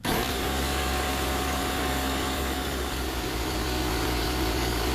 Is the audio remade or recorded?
remade